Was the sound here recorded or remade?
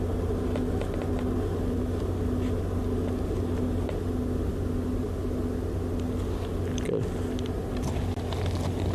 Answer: recorded